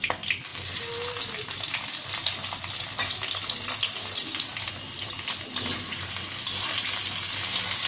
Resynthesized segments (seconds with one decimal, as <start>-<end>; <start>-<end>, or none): none